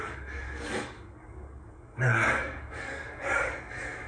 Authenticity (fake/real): fake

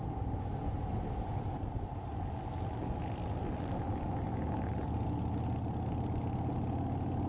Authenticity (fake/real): real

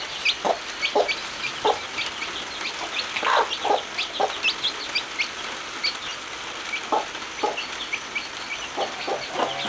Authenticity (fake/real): real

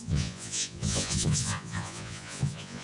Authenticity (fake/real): fake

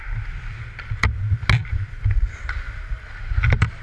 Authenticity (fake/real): real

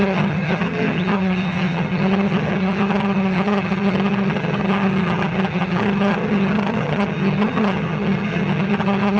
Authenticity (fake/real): fake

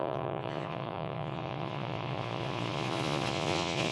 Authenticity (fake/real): fake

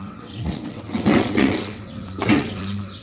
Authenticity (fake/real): fake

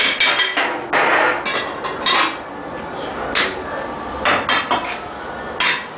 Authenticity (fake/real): real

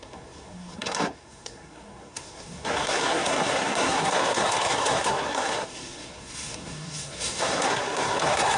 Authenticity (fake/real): fake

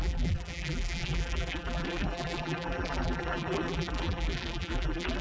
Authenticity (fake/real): fake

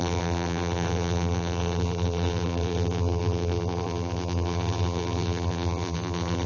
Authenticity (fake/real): fake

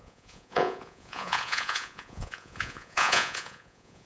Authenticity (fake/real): fake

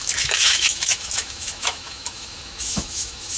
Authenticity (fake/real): fake